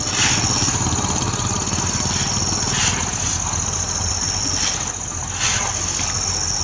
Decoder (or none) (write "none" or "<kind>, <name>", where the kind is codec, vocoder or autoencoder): none